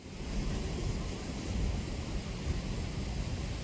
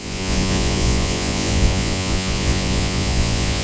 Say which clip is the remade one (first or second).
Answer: second